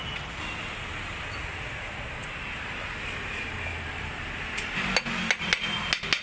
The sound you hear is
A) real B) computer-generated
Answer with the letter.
A